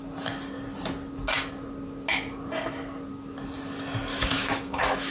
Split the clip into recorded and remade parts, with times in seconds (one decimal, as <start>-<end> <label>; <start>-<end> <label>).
0.0-4.1 recorded; 4.1-5.1 remade